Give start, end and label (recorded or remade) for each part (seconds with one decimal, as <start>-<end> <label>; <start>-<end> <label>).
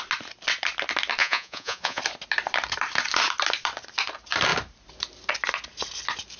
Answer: 0.0-1.2 recorded; 1.2-2.0 remade; 2.0-6.4 recorded